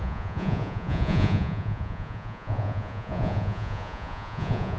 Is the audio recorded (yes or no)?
no